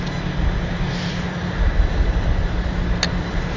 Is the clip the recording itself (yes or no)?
yes